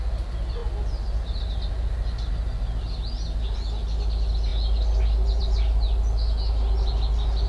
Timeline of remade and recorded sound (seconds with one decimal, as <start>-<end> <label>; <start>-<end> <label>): 0.0-7.5 recorded